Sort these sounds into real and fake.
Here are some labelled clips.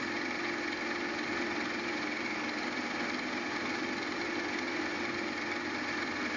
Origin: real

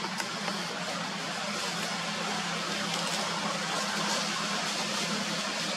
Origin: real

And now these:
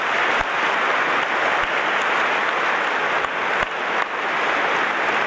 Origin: real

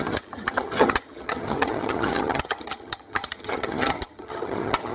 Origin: fake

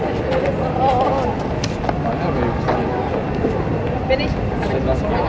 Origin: real